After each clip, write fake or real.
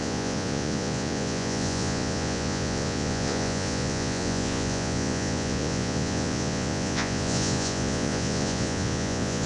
fake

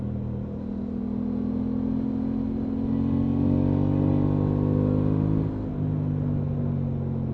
real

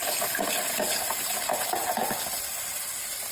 real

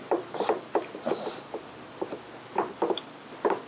real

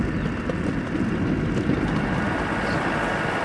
real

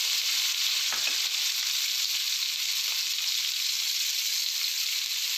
real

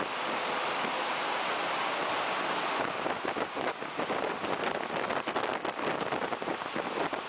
real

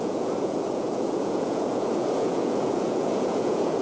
fake